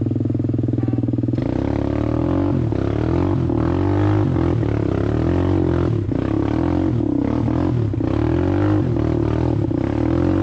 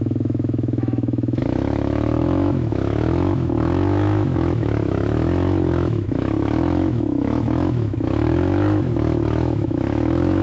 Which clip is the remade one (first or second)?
second